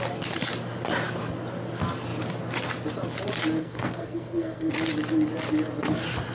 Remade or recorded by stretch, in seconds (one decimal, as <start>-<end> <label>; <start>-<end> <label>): 0.0-3.6 recorded; 3.6-4.7 remade; 4.7-6.3 recorded